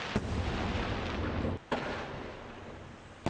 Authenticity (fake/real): real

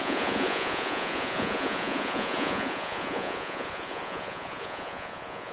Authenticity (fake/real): fake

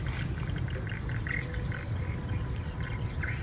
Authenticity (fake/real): real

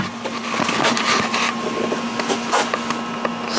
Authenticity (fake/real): real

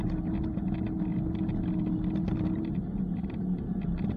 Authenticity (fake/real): real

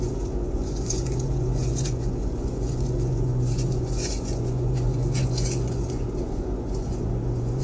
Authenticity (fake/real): fake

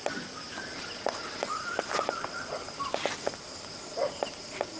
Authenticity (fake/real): real